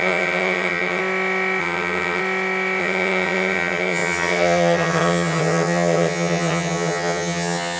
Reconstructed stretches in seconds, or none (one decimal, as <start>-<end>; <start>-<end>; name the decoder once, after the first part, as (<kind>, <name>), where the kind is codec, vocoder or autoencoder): 0.0-1.0 (vocoder, HiFi-GAN); 1.6-2.2; 2.8-7.8